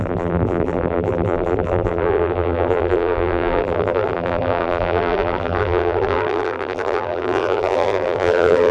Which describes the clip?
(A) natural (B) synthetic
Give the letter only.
B